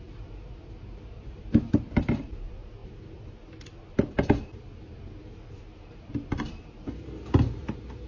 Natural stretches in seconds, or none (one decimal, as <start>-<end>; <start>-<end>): none